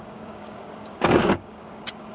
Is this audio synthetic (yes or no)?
yes